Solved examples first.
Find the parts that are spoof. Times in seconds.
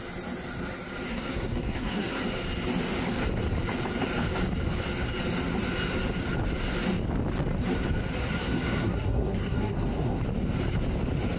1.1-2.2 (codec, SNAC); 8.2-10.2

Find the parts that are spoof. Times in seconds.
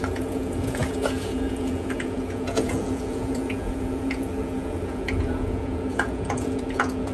0.0-7.1 (vocoder, Vocos)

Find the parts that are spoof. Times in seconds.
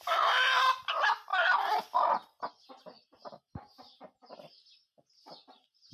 none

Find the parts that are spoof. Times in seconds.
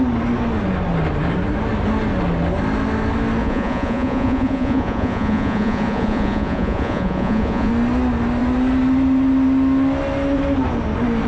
3.4-7.7 (vocoder, Vocos)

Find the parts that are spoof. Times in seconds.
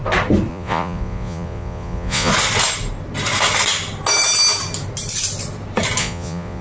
0.5-2.3 (vocoder, Vocos); 6.0-6.6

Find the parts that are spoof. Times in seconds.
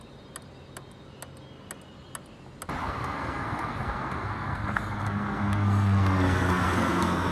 2.8-7.3 (codec, SNAC)